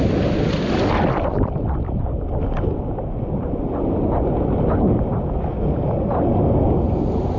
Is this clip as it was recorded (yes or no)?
yes